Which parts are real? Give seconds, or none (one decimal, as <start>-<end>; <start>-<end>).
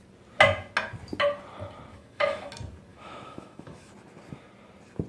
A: 0.0-1.9; 2.5-2.9; 3.9-5.1